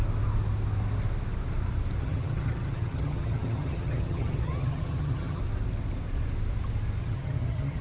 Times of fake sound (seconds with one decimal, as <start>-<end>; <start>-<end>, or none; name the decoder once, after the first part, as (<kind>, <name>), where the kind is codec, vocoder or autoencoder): 2.0-5.4 (vocoder, HiFi-GAN); 7.0-7.8